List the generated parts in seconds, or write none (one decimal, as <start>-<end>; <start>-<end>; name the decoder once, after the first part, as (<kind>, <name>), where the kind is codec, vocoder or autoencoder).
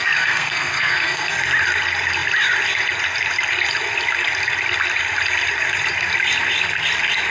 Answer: 0.0-1.5 (codec, SNAC)